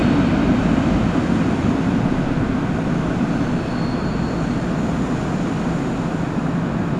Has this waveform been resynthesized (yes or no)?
no